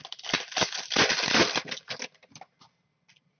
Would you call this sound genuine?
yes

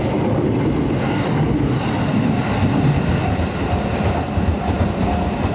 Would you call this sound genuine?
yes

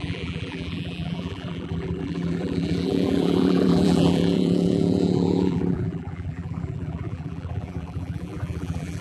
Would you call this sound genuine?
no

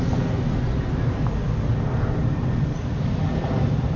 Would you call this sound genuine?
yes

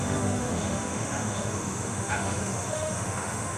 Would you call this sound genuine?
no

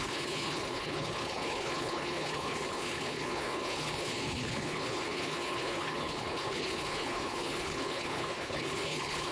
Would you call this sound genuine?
no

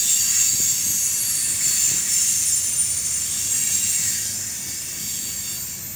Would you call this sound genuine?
yes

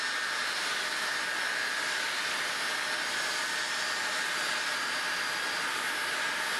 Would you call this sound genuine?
yes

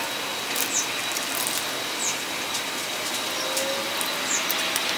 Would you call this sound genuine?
yes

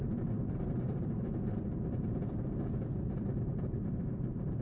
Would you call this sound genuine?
no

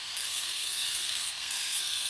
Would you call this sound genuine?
no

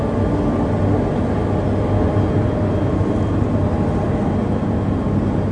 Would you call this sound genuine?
yes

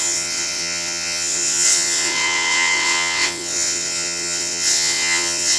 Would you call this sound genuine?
no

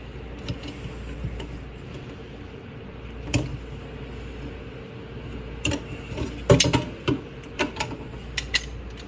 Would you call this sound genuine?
yes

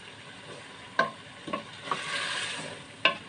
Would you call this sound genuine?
yes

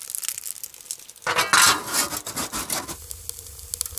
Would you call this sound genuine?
yes